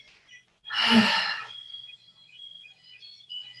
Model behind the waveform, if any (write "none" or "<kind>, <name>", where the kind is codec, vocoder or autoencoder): vocoder, Vocos